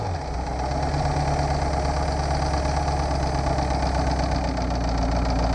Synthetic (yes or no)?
no